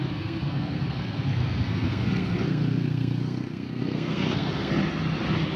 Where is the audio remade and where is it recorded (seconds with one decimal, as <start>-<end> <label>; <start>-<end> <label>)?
0.0-4.7 remade; 4.7-5.6 recorded